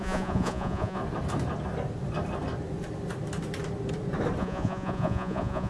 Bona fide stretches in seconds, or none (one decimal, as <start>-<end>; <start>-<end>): 1.0-4.4